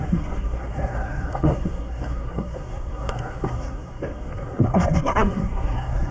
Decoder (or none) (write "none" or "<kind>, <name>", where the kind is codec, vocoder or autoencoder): codec, SNAC